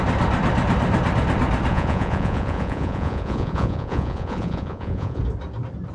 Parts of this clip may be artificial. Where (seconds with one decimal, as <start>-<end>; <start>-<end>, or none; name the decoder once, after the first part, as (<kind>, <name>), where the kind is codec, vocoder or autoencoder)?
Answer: 1.7-5.2 (vocoder, Vocos)